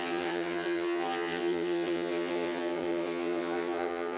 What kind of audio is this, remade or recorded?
remade